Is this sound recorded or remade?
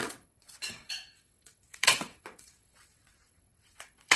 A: remade